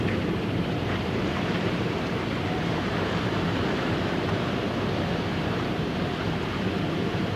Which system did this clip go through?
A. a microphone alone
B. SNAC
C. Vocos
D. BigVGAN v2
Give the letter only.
D